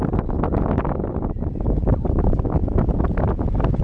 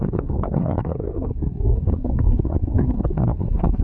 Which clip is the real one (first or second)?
first